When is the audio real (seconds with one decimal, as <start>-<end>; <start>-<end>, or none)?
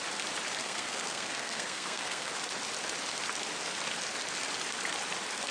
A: 0.0-0.6; 2.3-5.5